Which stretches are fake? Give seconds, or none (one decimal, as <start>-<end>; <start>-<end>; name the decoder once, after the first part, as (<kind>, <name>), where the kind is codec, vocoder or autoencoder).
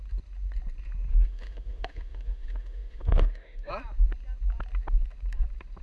1.1-3.7 (autoencoder, DAC-VAE)